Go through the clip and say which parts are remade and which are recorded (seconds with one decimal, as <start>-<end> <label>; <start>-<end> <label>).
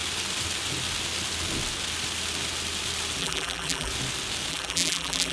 0.0-3.2 recorded; 3.2-3.9 remade; 3.9-4.5 recorded; 4.5-5.3 remade